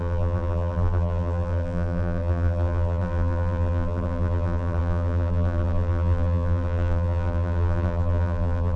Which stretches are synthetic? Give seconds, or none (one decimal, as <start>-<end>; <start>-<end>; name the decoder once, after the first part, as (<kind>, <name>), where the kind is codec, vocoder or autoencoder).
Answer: 0.0-8.8 (vocoder, BigVGAN v2)